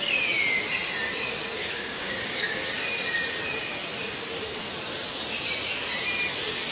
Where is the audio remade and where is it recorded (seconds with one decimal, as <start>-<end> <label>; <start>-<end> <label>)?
0.0-1.6 recorded; 1.6-2.6 remade; 2.6-6.7 recorded